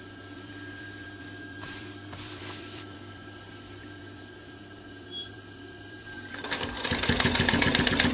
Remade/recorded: remade